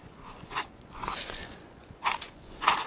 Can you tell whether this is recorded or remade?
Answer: remade